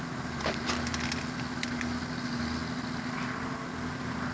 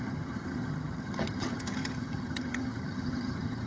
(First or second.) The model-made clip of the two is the second